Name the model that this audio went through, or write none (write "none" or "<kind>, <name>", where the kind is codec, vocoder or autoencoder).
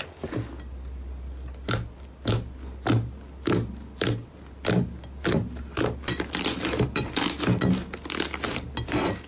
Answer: none